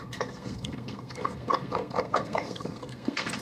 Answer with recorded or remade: remade